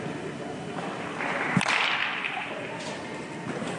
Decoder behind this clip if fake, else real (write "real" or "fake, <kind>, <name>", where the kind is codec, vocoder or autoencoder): real